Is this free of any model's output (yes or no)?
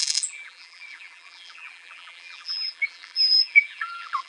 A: no